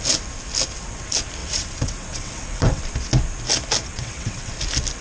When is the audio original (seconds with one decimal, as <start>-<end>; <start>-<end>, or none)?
0.0-1.4; 2.8-3.9; 4.5-5.0